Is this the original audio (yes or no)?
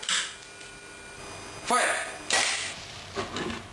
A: yes